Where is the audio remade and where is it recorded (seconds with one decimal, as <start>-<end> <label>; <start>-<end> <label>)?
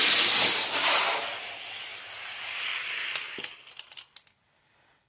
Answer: 0.0-5.1 recorded